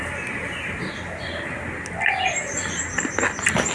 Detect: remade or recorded recorded